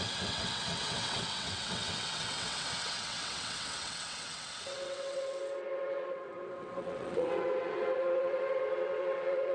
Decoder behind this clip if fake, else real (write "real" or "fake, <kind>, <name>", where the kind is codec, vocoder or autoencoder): fake, vocoder, WaveNeXt